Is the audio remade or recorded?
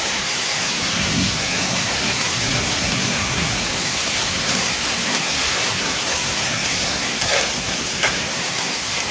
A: remade